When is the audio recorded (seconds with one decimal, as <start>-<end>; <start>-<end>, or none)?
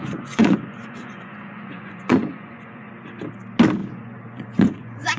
2.9-3.8